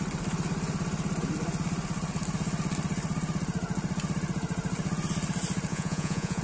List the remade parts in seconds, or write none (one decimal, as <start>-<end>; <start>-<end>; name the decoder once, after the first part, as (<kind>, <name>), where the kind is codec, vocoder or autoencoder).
5.7-6.4 (vocoder, Vocos)